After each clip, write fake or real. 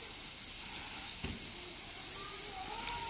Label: real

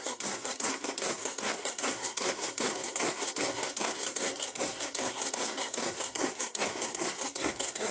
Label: fake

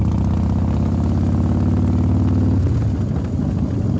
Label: real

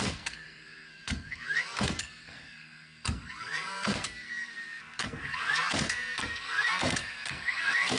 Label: fake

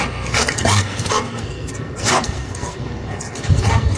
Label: fake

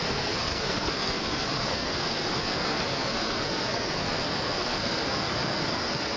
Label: fake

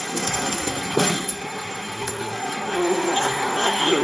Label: fake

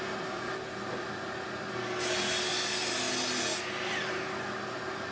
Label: real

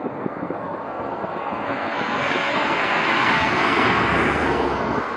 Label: fake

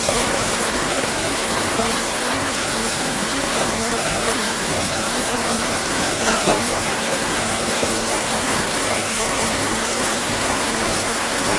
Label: fake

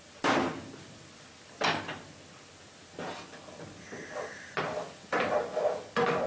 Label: real